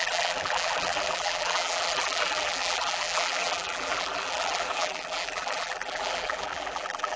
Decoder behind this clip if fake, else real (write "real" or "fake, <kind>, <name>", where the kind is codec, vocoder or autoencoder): fake, vocoder, BigVGAN v2